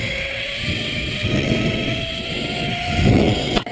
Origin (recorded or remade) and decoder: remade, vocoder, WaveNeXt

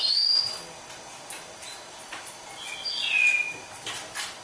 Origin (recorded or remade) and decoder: recorded